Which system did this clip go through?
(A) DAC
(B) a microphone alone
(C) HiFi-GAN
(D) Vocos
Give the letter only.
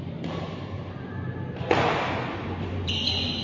B